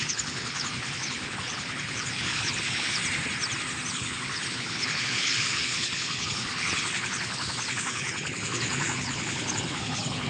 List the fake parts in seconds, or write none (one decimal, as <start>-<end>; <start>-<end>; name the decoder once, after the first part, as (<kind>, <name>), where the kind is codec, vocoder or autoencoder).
0.0-3.0 (codec, HILCodec); 3.9-10.3